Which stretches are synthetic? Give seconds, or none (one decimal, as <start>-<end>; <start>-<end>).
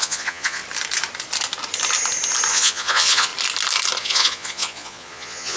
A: 0.0-0.6; 2.5-3.3; 4.0-5.6